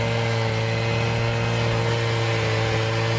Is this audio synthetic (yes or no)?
no